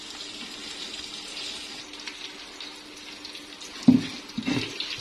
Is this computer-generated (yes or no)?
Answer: no